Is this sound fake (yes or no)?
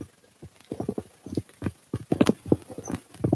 no